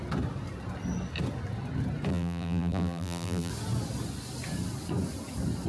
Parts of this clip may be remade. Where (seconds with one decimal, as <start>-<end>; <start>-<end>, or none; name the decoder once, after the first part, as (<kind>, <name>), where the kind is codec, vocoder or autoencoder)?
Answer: 2.1-3.5 (vocoder, BigVGAN v2)